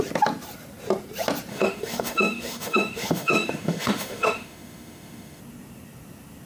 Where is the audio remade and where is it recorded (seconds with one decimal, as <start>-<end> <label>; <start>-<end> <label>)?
0.0-1.5 recorded; 1.5-5.4 remade; 5.4-6.5 recorded